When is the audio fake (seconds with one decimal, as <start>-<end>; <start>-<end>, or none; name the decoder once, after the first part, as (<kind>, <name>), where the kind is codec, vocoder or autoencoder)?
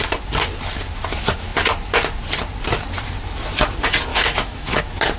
4.1-4.8 (autoencoder, DAC-VAE)